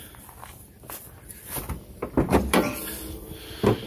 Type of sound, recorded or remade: recorded